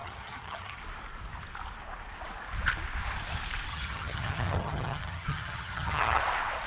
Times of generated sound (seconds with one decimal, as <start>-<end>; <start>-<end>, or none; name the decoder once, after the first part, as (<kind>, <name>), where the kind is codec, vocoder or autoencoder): 0.0-0.8 (vocoder, HiFi-GAN); 3.7-6.2